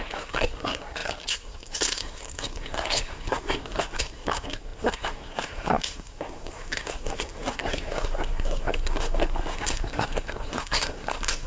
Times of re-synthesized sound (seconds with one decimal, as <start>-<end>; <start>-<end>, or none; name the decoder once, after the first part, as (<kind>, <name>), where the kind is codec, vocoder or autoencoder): 0.0-11.5 (codec, SNAC)